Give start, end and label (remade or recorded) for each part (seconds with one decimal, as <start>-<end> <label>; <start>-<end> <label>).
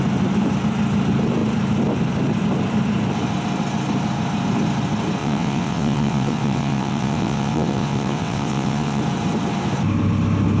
0.0-5.2 recorded; 5.2-9.0 remade; 9.0-10.6 recorded